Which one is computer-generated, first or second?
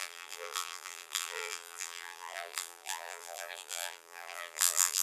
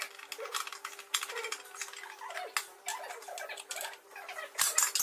first